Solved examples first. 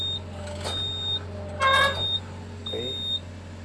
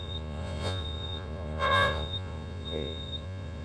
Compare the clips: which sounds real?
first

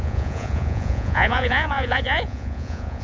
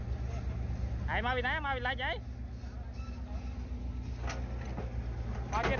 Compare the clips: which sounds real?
second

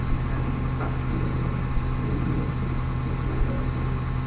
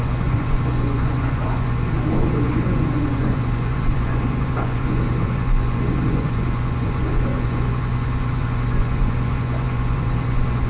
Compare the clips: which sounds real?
first